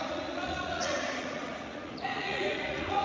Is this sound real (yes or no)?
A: no